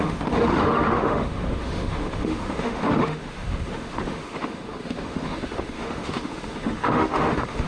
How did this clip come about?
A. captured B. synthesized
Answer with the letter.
B